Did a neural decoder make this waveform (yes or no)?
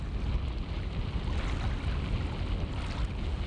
no